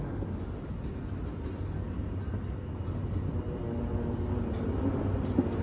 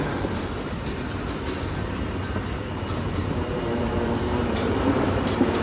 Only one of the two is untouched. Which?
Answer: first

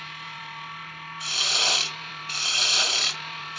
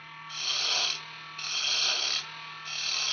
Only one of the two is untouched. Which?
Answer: second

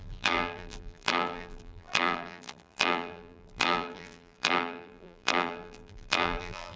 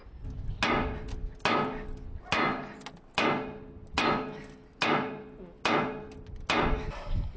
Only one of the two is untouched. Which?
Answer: second